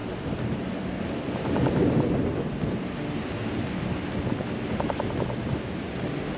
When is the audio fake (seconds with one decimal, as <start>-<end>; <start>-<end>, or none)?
none